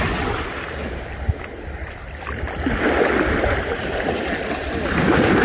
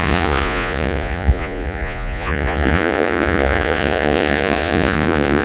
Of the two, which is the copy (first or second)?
second